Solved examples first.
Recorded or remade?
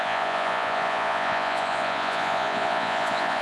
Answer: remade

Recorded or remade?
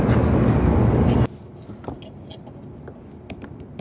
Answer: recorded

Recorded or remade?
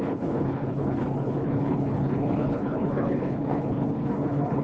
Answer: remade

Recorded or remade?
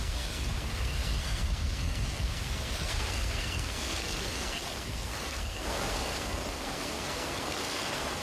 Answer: remade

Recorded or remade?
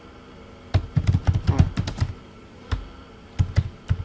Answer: recorded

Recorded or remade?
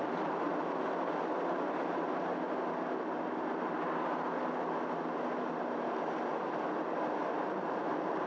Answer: recorded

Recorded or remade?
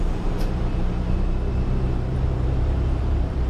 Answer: remade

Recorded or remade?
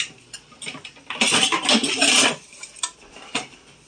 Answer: recorded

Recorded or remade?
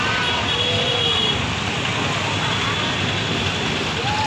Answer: recorded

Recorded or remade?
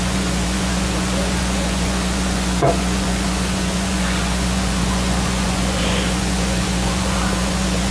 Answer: remade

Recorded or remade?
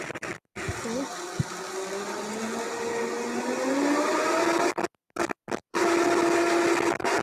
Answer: recorded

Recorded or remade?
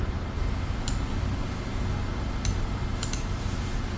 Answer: recorded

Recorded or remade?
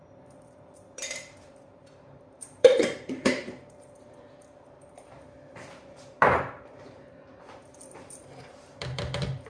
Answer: remade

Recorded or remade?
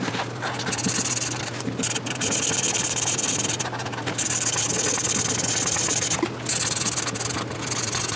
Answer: recorded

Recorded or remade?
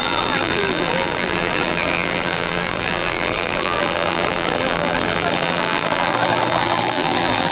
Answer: remade